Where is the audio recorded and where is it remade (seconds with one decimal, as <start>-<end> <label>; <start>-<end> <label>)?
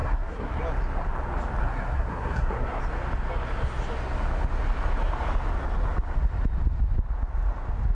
0.0-0.6 remade; 0.6-1.6 recorded; 1.6-2.8 remade; 2.8-7.9 recorded